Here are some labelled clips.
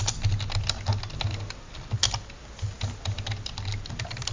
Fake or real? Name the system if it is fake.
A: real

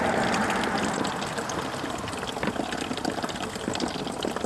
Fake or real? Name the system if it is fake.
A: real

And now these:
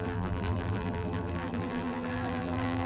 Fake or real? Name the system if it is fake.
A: fake, vocoder, BigVGAN v2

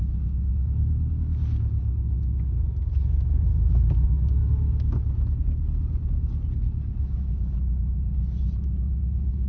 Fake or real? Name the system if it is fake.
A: real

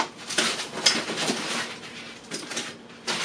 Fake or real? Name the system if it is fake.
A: real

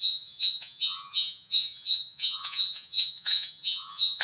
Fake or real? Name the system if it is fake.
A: fake, vocoder, Vocos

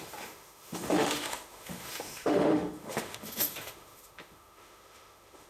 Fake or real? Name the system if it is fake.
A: fake, autoencoder, DAC-VAE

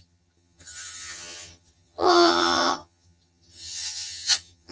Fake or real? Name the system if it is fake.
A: fake, vocoder, HiFi-GAN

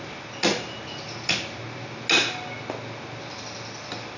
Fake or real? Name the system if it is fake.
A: real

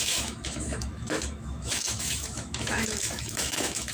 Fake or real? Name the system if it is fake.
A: fake, autoencoder, DAC-VAE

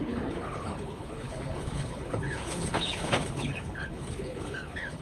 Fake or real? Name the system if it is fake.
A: fake, codec, HILCodec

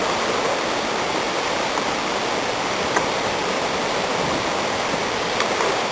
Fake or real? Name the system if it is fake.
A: real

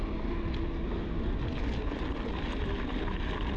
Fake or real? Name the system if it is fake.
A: real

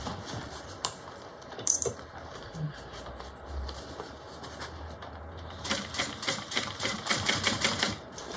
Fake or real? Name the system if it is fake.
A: fake, vocoder, BigVGAN v2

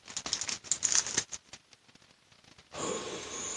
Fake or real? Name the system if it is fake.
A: real